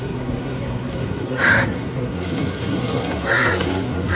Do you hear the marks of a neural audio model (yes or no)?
yes